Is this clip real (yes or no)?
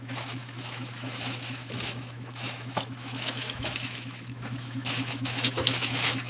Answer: no